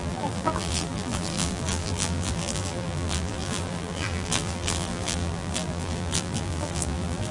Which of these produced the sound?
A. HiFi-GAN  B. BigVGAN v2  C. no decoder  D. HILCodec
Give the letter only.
B